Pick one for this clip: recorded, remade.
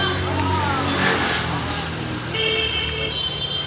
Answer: recorded